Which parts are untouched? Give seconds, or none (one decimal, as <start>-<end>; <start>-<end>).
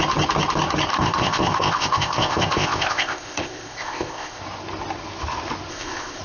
0.0-0.9; 4.4-5.7